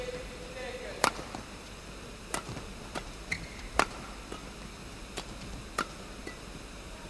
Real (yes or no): no